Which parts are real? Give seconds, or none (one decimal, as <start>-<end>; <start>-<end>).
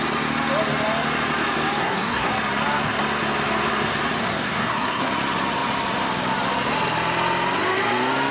0.0-1.8; 2.3-4.2; 5.1-8.3